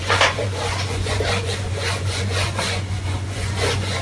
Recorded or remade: remade